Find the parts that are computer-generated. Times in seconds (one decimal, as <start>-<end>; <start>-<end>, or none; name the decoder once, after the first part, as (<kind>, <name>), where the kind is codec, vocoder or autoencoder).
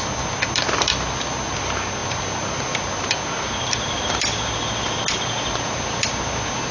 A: none